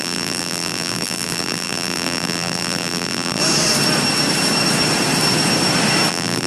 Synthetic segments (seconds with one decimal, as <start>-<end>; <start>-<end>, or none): 0.0-3.4; 6.1-6.5